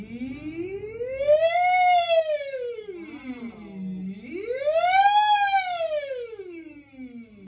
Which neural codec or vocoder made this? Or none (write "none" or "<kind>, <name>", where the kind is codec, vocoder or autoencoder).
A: none